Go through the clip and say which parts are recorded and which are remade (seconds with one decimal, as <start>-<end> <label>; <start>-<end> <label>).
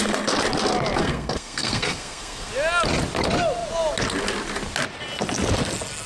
0.0-1.0 recorded; 1.0-2.5 remade; 2.5-6.1 recorded